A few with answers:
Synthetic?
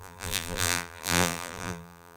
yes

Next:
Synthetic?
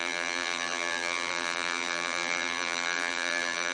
yes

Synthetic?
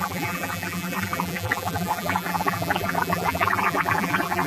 yes